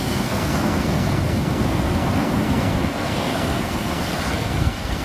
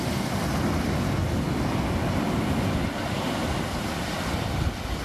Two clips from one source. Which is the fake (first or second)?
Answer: first